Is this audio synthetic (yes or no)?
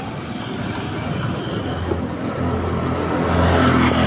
no